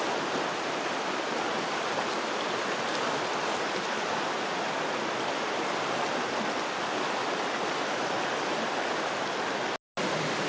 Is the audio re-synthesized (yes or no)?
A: no